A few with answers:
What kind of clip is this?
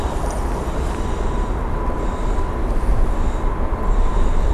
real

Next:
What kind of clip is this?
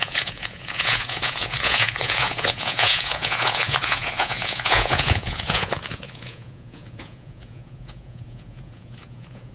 fake